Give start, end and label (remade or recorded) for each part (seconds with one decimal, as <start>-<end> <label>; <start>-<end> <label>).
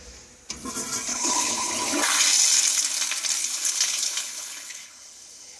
0.0-1.1 recorded; 1.1-1.7 remade; 1.7-3.4 recorded; 3.4-5.6 remade